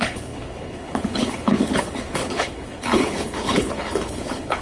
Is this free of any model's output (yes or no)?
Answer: no